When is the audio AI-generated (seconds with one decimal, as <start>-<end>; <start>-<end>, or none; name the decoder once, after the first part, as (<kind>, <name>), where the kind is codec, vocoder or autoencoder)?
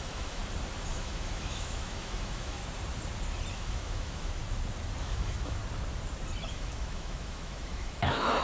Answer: 0.0-0.4 (autoencoder, DAC-VAE); 0.9-2.6; 3.5-4.4; 5.0-5.6; 6.5-8.4